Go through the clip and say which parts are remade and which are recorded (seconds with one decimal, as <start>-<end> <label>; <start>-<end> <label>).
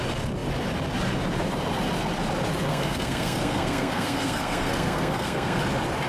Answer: 0.0-2.7 recorded; 2.7-5.6 remade; 5.6-6.1 recorded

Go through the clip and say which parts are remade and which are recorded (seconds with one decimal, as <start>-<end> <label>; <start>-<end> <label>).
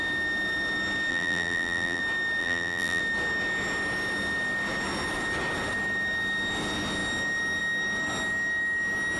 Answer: 0.0-1.1 recorded; 1.1-2.0 remade; 2.0-2.4 recorded; 2.4-3.0 remade; 3.0-9.2 recorded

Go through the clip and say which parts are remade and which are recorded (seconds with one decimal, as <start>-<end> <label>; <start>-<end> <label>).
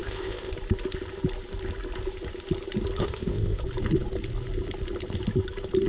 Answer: 0.0-0.5 remade; 0.5-3.0 recorded; 3.0-3.6 remade; 3.6-5.9 recorded